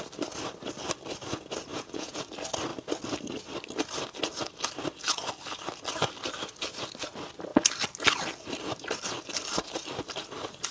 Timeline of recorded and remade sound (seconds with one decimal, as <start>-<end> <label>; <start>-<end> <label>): 0.0-1.7 recorded; 1.7-2.2 remade; 2.2-10.7 recorded